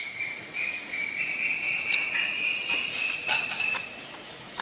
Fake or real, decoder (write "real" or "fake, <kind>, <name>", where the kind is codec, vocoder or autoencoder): fake, vocoder, Vocos